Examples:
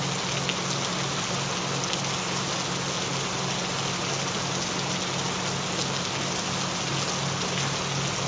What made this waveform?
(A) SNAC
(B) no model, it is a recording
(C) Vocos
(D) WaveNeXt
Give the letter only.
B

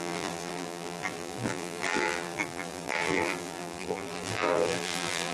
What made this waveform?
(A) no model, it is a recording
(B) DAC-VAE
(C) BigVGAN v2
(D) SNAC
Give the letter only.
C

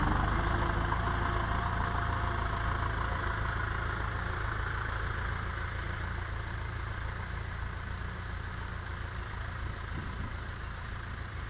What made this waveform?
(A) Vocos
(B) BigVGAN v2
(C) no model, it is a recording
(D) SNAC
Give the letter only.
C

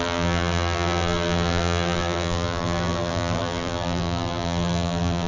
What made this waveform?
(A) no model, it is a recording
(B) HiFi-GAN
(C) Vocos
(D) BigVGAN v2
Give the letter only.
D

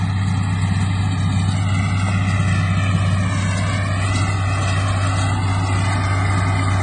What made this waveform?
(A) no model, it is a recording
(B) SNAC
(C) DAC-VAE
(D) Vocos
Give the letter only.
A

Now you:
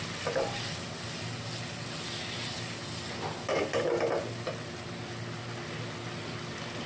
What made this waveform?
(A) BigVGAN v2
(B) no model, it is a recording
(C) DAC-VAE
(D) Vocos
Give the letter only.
B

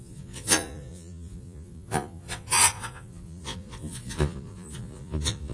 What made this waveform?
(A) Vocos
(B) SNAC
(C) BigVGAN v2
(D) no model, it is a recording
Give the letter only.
A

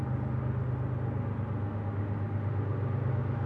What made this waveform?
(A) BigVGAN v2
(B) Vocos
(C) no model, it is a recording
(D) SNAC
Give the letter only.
C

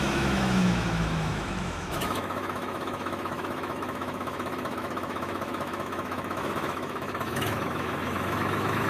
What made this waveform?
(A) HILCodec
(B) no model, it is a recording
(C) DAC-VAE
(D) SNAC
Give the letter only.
C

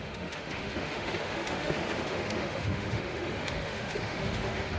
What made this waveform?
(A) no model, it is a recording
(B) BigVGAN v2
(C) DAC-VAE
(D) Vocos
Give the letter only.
C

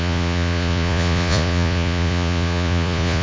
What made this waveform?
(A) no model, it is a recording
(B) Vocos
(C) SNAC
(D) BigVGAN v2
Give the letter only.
B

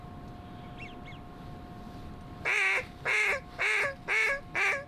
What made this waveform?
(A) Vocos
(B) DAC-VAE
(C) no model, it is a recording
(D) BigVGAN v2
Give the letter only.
C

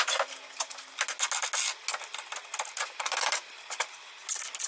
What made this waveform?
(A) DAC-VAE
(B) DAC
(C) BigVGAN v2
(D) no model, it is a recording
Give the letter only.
D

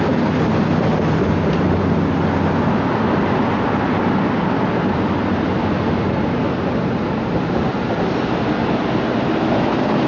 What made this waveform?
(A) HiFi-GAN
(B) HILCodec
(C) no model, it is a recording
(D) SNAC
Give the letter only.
C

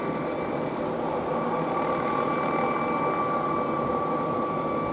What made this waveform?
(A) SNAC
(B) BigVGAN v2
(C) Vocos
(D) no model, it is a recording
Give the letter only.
D